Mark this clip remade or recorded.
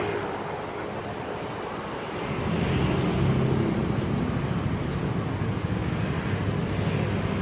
recorded